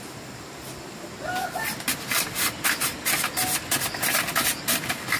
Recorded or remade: remade